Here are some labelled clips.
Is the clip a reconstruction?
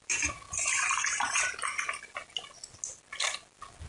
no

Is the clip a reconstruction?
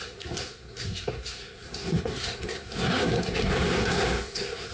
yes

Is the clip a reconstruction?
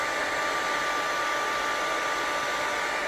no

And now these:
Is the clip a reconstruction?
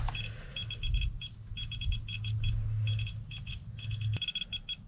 no